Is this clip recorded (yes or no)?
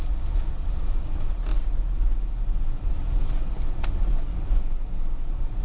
yes